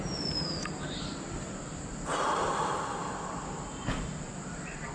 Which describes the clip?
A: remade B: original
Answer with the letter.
B